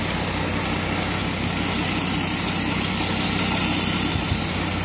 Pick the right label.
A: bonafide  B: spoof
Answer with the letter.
A